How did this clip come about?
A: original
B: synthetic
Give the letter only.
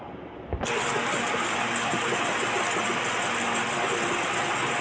A